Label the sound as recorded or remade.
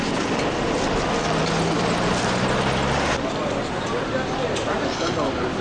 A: recorded